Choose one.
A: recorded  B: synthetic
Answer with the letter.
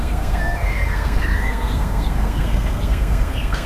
B